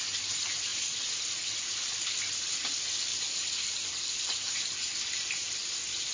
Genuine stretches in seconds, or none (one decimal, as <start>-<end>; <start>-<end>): 0.0-0.7; 1.6-3.1; 3.7-6.1